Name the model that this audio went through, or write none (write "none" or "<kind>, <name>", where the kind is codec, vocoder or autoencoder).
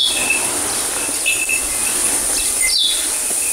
none